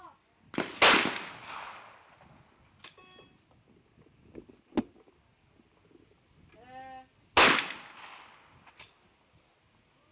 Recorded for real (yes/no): yes